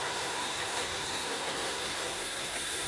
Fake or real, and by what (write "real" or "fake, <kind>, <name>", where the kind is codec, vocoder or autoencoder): fake, codec, SNAC